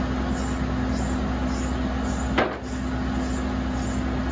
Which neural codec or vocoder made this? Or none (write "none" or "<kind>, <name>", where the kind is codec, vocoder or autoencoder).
none